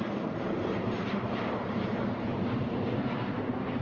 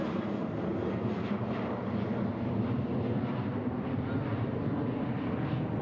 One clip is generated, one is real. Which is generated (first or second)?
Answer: first